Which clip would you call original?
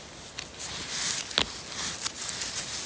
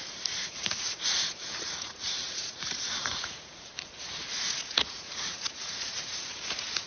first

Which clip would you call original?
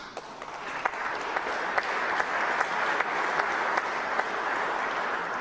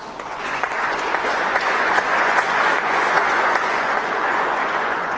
first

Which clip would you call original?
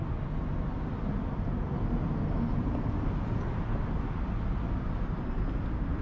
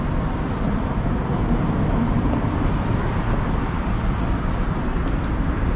first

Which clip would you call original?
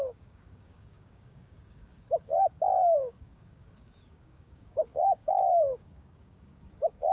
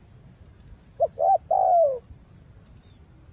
second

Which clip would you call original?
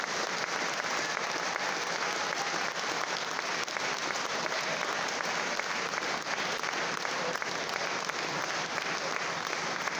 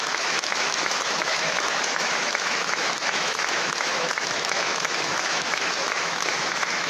first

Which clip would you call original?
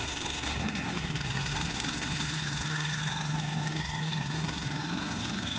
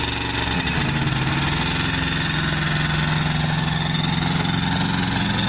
second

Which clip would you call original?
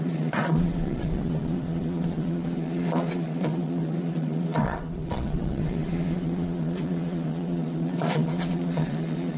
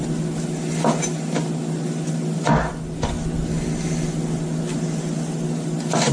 second